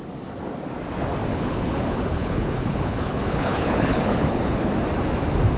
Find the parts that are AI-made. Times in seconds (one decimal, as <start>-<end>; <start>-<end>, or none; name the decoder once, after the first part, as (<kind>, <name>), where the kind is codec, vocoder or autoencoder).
1.3-4.7 (codec, HILCodec)